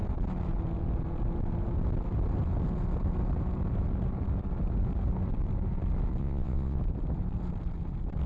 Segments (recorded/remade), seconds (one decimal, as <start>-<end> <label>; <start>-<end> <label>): 0.0-6.2 recorded; 6.2-6.8 remade; 6.8-8.3 recorded